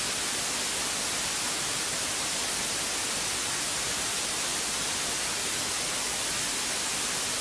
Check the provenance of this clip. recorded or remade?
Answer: recorded